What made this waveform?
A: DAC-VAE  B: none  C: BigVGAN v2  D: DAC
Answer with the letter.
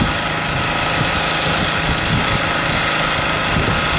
B